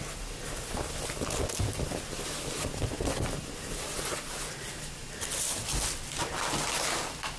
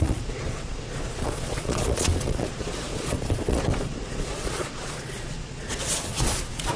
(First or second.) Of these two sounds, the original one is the first